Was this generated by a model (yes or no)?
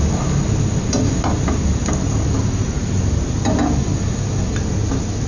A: no